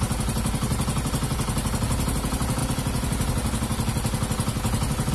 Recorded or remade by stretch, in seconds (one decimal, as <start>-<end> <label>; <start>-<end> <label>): 0.0-5.1 recorded